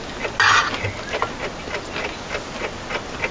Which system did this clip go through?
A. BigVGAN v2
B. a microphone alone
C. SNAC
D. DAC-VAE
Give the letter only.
B